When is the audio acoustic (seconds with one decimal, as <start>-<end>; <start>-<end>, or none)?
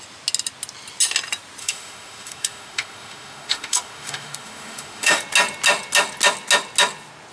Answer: 0.0-1.6; 5.2-7.3